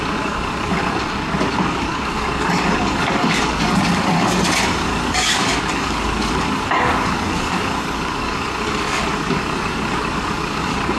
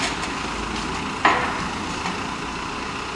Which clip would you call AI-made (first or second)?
first